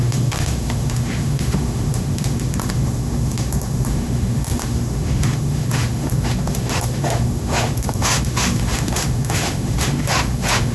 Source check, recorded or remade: remade